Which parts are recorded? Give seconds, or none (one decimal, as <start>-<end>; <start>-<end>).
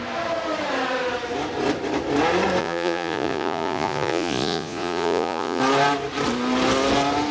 0.0-2.6; 5.6-7.3